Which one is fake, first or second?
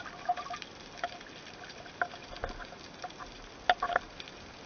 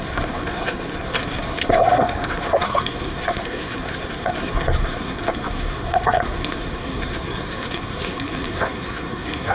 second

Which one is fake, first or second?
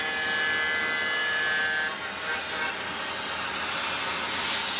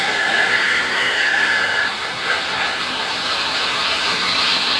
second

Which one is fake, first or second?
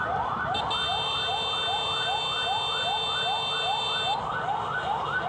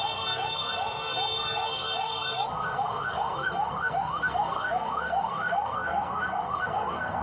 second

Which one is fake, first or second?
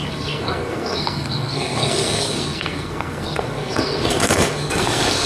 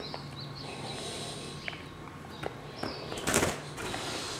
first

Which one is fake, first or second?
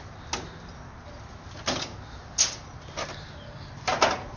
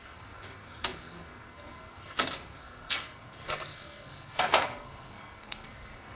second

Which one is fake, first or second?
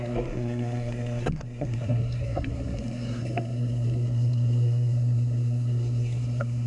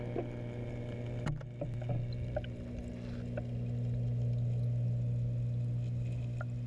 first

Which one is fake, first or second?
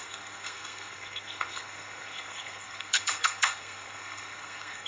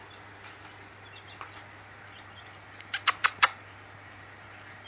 first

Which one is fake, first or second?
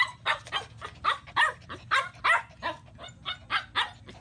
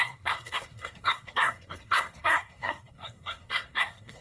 second